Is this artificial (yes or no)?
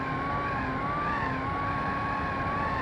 no